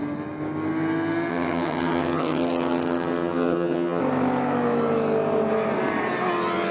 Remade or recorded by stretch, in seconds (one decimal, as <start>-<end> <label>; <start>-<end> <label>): 0.0-1.3 recorded; 1.3-4.0 remade; 4.0-6.7 recorded